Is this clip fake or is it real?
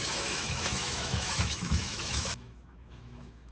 fake